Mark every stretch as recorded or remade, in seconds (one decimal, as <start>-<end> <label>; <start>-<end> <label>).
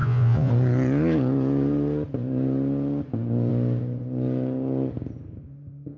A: 0.0-0.5 remade; 0.5-6.0 recorded